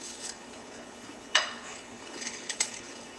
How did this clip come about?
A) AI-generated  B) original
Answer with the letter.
A